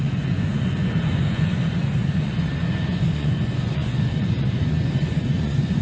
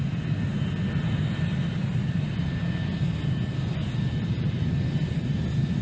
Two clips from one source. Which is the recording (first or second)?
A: second